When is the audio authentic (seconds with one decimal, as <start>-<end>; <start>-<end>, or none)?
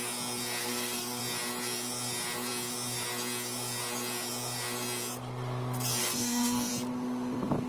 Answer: 0.0-0.6; 1.2-6.0; 6.7-7.7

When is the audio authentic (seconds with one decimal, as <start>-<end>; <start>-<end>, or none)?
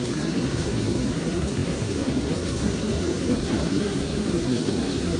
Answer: none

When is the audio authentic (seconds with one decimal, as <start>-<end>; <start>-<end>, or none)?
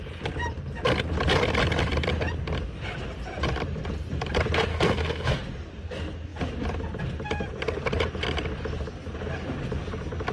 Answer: 0.0-4.7; 5.4-10.3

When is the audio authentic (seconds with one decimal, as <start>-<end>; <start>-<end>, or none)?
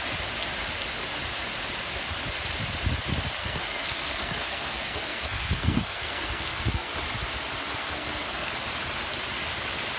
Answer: 0.0-3.4; 6.9-7.8; 8.5-10.0